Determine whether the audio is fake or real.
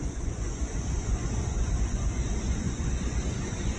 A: fake